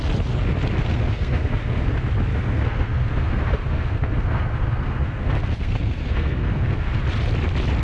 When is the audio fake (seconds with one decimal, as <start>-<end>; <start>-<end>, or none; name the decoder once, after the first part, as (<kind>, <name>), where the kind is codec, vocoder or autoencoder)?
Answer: 0.8-1.9 (codec, SNAC); 2.3-7.0